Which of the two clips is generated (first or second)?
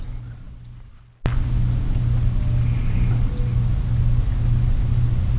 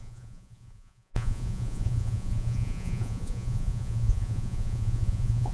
second